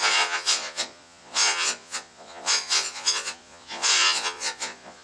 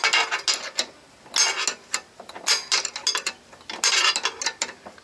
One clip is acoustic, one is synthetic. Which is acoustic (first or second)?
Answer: second